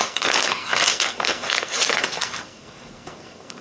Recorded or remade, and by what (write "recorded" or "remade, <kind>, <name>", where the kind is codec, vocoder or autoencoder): remade, codec, SNAC